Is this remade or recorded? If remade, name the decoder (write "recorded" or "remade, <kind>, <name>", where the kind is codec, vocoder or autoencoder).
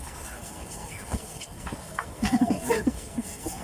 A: remade, codec, SNAC